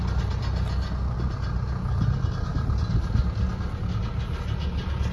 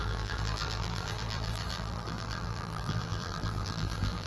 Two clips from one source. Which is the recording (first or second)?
first